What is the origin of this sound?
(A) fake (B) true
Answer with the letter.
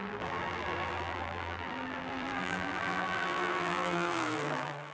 A